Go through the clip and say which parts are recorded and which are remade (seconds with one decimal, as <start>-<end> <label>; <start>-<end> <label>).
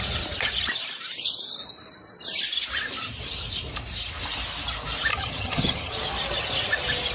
0.0-5.1 recorded; 5.1-5.9 remade; 5.9-7.1 recorded